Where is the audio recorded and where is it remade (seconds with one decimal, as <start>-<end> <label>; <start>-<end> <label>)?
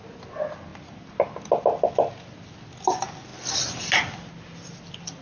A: 0.0-5.2 recorded